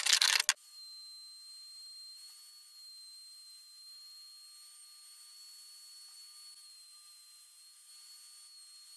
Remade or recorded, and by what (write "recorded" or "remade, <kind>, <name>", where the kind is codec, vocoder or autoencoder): recorded